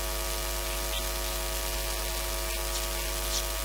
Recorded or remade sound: recorded